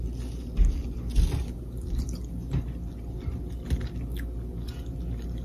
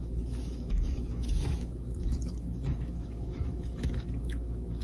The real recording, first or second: first